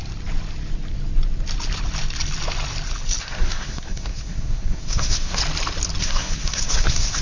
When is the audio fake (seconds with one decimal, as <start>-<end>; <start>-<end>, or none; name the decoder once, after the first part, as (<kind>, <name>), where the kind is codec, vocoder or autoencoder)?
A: 3.2-5.4 (codec, SNAC); 6.0-7.2